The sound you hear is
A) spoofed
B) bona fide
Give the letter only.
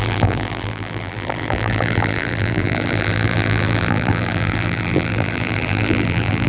A